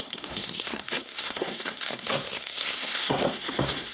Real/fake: fake